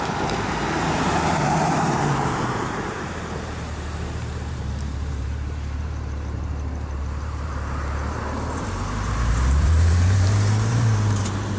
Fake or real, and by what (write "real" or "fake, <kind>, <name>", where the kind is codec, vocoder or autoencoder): fake, vocoder, BigVGAN v2